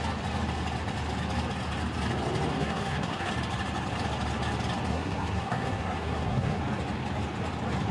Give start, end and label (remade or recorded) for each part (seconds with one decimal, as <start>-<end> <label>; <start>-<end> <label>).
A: 0.0-2.5 recorded; 2.5-3.3 remade; 3.3-4.9 recorded; 4.9-6.6 remade; 6.6-7.9 recorded